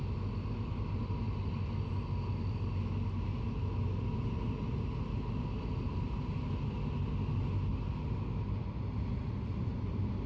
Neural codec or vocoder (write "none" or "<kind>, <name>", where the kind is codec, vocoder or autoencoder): none